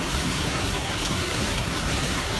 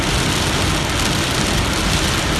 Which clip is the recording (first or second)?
second